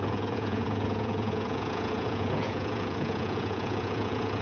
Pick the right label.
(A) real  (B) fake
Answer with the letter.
B